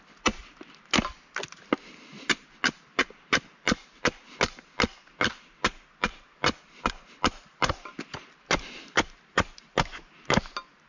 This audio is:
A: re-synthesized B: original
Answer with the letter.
B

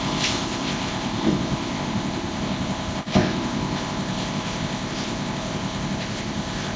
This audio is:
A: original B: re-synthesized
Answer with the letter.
B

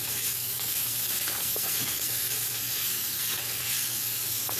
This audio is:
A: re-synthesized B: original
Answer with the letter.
A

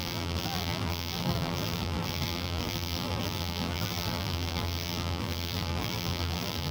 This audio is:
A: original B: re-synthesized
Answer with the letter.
B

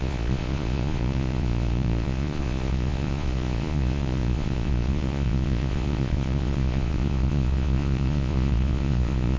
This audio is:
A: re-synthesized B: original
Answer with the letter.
A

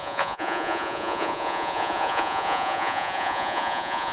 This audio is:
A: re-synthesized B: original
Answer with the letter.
A